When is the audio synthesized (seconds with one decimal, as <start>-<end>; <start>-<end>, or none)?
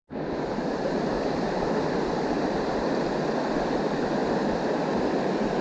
4.2-5.0